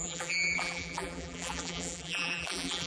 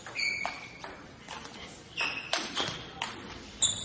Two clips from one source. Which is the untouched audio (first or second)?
second